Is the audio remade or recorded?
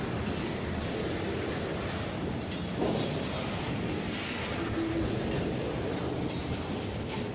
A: recorded